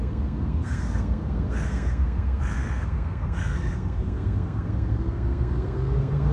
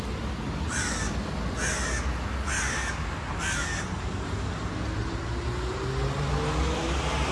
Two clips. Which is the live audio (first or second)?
second